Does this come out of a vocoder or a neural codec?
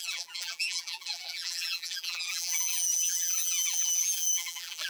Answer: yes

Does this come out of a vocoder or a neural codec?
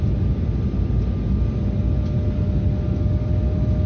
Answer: no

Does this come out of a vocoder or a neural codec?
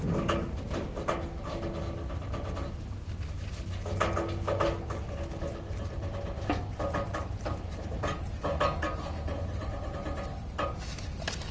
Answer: no